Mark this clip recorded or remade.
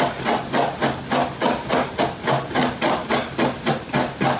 recorded